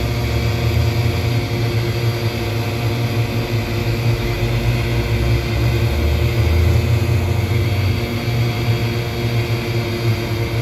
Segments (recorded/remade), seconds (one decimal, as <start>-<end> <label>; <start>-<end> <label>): 0.0-3.8 recorded; 3.8-4.4 remade; 4.4-10.6 recorded

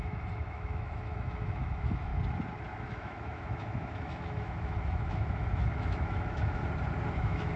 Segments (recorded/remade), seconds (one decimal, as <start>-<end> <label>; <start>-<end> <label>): 0.0-2.1 remade; 2.1-2.8 recorded; 2.8-6.6 remade; 6.6-7.1 recorded; 7.1-7.6 remade

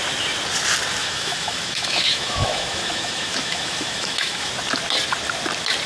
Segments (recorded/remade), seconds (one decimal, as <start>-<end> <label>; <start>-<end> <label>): 0.0-1.0 recorded; 1.0-4.5 remade; 4.5-5.9 recorded

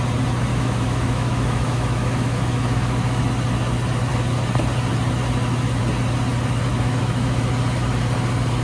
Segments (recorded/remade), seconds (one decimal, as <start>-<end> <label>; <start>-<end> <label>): 0.0-0.5 recorded; 0.5-3.2 remade; 3.2-6.7 recorded; 6.7-7.4 remade; 7.4-8.6 recorded

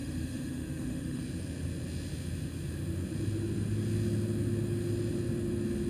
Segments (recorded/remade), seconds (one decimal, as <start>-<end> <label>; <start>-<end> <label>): 0.0-1.2 remade; 1.2-5.9 recorded

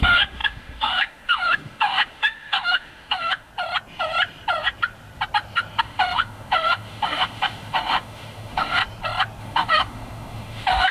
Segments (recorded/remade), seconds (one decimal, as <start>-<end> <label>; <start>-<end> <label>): 0.0-3.5 remade; 3.5-5.8 recorded; 5.8-8.8 remade; 8.8-9.4 recorded; 9.4-10.9 remade

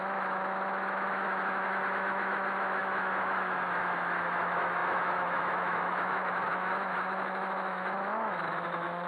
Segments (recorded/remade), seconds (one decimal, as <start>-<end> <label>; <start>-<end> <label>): 0.0-9.1 remade

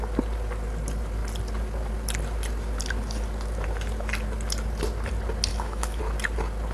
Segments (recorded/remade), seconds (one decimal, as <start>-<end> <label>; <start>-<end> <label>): 0.0-5.5 recorded; 5.5-6.0 remade; 6.0-6.7 recorded